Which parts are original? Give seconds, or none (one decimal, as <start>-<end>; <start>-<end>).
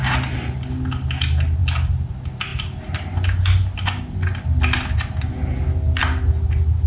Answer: 0.0-6.9